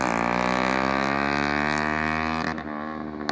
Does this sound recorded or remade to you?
recorded